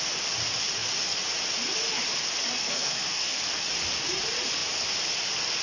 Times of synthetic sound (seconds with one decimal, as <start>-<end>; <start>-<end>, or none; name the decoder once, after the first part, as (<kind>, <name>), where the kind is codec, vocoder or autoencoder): 2.6-3.4 (codec, SNAC)